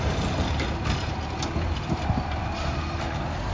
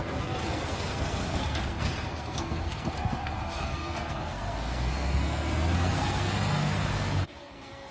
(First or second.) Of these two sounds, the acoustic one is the first